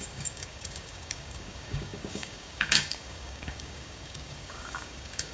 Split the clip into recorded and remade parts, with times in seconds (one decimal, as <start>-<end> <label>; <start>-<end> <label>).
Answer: 0.0-5.3 remade